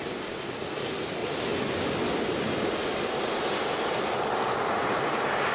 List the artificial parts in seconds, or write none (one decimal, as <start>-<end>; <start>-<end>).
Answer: none